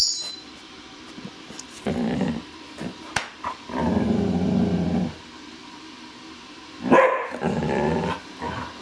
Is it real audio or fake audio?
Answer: fake